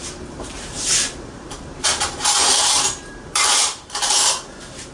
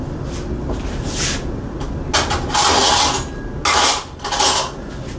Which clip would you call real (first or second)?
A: second